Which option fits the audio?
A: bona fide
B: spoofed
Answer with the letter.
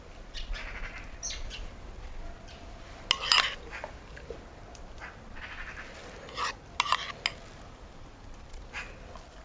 A